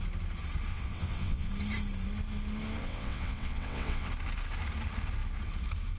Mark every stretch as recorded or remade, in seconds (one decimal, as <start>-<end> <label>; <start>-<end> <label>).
0.0-0.7 recorded; 0.7-1.5 remade; 1.5-2.8 recorded; 2.8-4.1 remade; 4.1-6.0 recorded